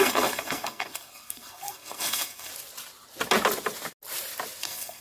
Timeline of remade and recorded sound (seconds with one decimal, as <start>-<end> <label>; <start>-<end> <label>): 0.0-2.5 remade; 2.5-4.6 recorded; 4.6-5.0 remade